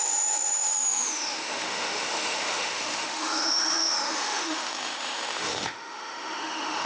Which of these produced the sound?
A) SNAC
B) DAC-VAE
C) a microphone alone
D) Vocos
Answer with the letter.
B